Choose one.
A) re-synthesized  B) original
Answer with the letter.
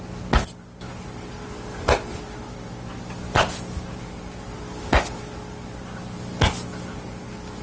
B